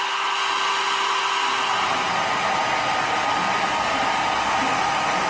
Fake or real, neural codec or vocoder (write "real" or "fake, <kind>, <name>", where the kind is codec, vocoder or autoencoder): real